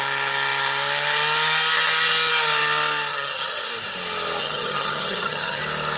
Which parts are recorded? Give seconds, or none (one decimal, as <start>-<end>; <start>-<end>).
0.0-3.1; 3.7-4.4; 5.6-6.0